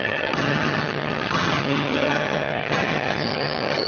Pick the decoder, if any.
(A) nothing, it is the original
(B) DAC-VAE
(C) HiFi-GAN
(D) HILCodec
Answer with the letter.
C